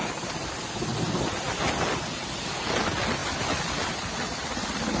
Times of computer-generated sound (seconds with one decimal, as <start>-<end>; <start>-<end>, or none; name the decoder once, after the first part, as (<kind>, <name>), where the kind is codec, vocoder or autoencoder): 0.0-0.5 (vocoder, BigVGAN v2)

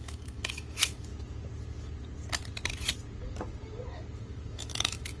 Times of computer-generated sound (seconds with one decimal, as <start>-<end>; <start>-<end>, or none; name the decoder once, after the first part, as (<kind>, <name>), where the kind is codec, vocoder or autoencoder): 0.0-1.1 (autoencoder, DAC-VAE); 4.2-5.2

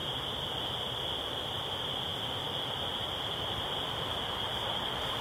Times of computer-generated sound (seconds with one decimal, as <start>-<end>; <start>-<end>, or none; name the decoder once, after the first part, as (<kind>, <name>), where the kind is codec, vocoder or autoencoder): 0.9-5.2 (vocoder, BigVGAN v2)

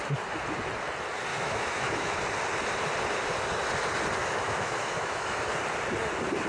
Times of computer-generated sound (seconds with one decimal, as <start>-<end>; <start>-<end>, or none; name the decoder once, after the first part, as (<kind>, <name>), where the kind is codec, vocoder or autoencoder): 1.3-2.2 (autoencoder, DAC-VAE); 4.2-5.5

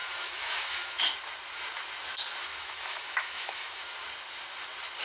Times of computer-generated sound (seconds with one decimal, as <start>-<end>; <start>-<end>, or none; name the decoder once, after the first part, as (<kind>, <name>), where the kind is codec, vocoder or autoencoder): 0.0-1.0 (autoencoder, DAC-VAE); 2.5-3.8

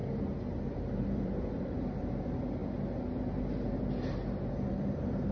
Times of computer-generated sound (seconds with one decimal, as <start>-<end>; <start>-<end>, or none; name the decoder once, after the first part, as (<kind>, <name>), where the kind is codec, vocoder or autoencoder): 0.7-2.6 (vocoder, BigVGAN v2); 4.5-5.3